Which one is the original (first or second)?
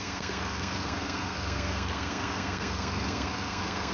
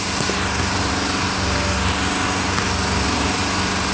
second